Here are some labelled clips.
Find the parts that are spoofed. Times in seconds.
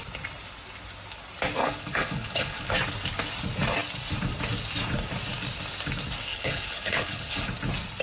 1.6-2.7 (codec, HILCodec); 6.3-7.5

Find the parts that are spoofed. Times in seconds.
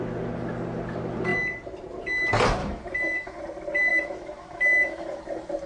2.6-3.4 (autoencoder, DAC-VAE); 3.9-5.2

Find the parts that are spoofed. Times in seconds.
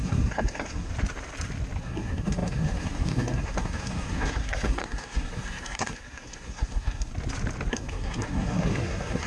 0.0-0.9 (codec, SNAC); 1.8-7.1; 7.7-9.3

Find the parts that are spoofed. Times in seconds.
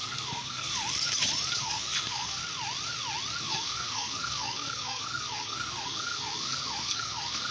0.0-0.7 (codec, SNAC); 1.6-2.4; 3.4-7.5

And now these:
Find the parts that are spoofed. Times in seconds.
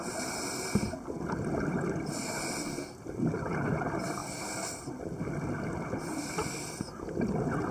none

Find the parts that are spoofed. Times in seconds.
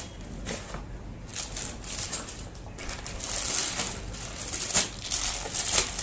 none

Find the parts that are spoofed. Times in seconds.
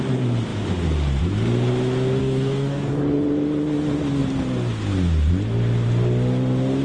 2.2-2.9 (codec, DAC)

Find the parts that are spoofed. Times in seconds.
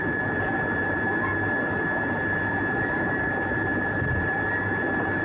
none